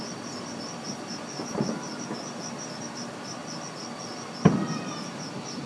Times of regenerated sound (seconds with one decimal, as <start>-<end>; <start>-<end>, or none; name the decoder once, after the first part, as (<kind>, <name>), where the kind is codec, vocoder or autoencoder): 0.0-3.4 (vocoder, BigVGAN v2)